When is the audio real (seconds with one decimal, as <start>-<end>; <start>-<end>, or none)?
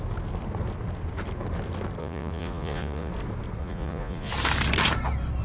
0.0-2.0; 3.1-3.6; 4.3-5.4